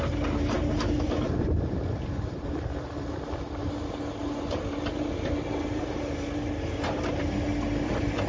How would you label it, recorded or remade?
recorded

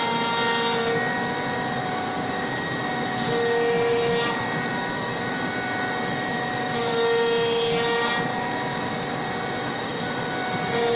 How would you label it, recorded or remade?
recorded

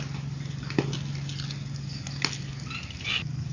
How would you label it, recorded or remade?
recorded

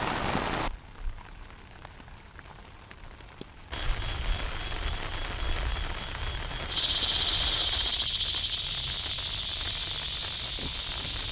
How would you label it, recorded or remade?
recorded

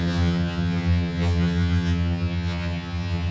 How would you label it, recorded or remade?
remade